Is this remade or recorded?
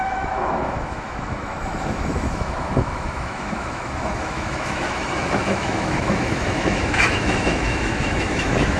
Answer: remade